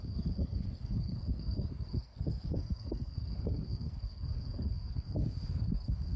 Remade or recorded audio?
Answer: remade